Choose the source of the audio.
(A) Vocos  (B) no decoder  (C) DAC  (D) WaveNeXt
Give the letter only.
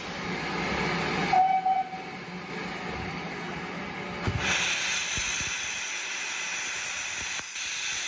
B